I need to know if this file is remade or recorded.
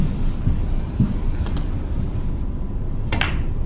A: recorded